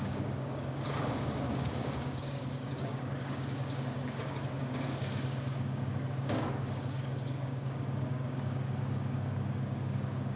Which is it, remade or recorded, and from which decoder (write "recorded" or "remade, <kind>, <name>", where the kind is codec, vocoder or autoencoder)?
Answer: remade, codec, DAC